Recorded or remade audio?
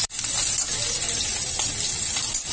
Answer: recorded